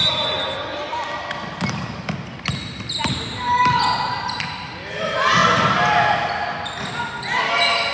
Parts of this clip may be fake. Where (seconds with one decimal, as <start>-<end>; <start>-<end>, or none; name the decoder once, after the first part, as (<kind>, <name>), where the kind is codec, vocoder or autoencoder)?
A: none